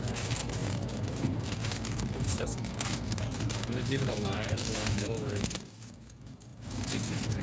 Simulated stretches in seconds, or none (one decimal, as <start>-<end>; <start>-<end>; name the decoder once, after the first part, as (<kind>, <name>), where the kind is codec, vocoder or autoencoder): 0.0-7.4 (codec, DAC)